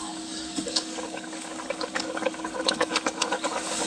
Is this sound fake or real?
fake